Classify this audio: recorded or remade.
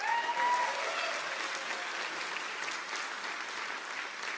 recorded